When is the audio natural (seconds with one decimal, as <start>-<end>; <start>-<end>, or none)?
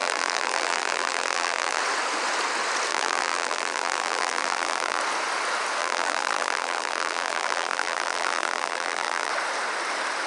1.8-2.9; 5.0-5.8; 9.3-10.3